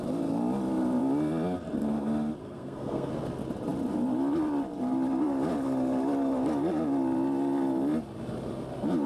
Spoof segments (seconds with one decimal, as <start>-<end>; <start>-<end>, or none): 2.4-3.1